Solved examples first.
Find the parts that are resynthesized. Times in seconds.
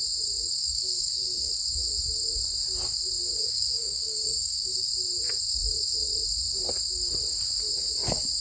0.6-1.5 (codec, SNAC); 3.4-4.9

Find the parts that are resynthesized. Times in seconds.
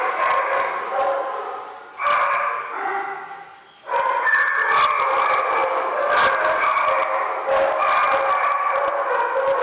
none